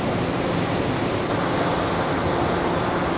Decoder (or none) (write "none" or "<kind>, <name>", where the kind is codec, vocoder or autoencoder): none